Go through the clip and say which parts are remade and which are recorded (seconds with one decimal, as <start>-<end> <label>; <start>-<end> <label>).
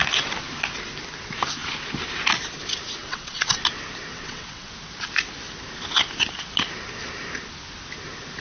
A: 0.0-3.0 recorded; 3.0-3.6 remade; 3.6-4.1 recorded; 4.1-4.7 remade; 4.7-8.4 recorded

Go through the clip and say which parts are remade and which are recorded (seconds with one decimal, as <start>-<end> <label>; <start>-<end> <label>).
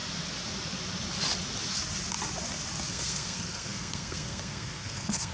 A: 0.0-2.9 recorded; 2.9-5.3 remade